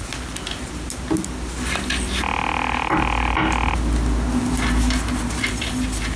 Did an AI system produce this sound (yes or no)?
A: no